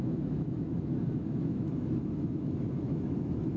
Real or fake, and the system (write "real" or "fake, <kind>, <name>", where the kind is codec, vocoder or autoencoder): fake, autoencoder, DAC-VAE